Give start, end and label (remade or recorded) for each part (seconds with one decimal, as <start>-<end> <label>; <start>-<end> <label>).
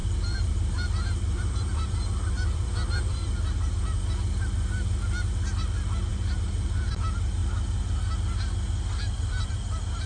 0.0-4.0 remade; 4.0-6.1 recorded; 6.1-6.9 remade; 6.9-10.1 recorded